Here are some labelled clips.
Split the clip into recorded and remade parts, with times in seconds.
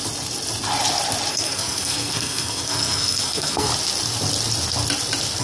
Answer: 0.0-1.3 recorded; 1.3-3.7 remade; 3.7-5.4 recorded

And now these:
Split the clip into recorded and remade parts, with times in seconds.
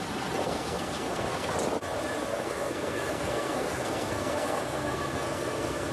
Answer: 0.0-0.4 recorded; 0.4-1.5 remade; 1.5-2.3 recorded; 2.3-5.9 remade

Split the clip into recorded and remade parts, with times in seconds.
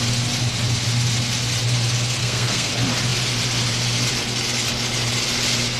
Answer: 0.0-2.2 recorded; 2.2-2.7 remade; 2.7-5.8 recorded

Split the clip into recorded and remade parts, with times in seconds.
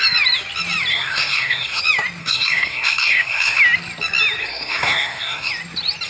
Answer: 0.0-0.9 recorded; 0.9-1.8 remade; 1.8-2.2 recorded; 2.2-3.6 remade; 3.6-4.4 recorded; 4.4-5.5 remade; 5.5-6.1 recorded